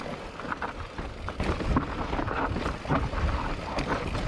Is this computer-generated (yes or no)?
no